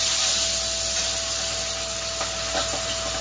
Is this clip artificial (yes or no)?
no